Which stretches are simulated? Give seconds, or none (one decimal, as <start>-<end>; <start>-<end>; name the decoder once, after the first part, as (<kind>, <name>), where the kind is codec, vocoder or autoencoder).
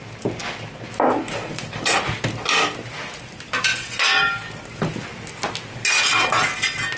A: 3.7-4.2 (vocoder, Vocos)